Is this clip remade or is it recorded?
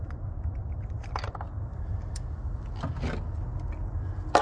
recorded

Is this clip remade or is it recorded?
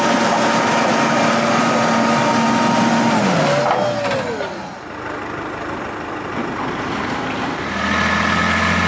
recorded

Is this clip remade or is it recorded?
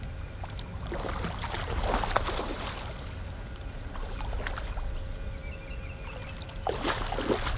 recorded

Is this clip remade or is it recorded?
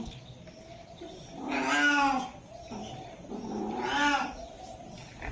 recorded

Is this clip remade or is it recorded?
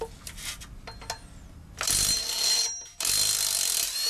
recorded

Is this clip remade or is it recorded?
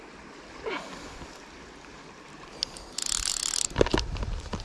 recorded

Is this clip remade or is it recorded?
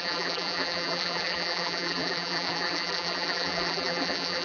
remade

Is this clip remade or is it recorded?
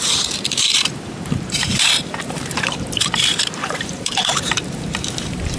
remade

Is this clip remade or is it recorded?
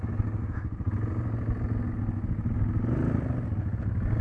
recorded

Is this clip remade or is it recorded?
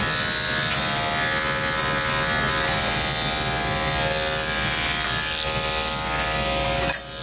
recorded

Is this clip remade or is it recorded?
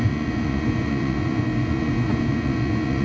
remade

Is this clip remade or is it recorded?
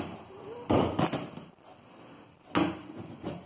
recorded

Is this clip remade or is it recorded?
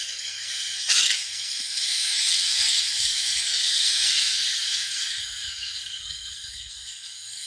remade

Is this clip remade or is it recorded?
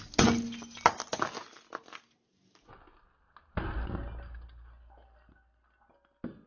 recorded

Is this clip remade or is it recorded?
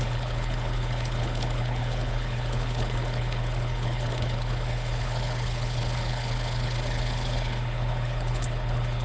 remade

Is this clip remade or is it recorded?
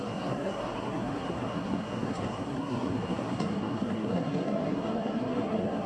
remade